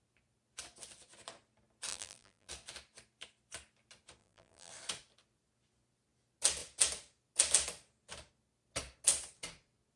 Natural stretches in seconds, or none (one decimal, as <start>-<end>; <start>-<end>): 0.0-1.9; 2.5-4.2; 4.7-10.0